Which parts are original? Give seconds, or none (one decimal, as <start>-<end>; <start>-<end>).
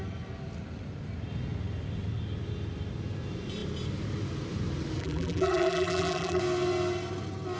0.0-5.0; 6.4-7.6